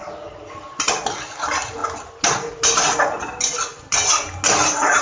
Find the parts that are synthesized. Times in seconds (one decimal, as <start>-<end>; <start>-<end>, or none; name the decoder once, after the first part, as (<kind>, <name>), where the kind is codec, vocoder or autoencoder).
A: none